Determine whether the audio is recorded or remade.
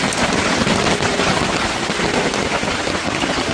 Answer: recorded